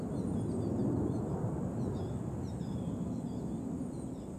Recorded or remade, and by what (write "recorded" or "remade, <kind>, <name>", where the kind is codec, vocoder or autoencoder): recorded